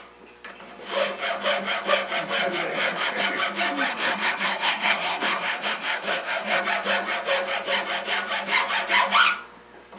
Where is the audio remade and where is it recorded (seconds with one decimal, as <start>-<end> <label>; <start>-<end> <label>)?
0.0-2.7 recorded; 2.7-3.2 remade; 3.2-3.9 recorded; 3.9-6.6 remade; 6.6-10.0 recorded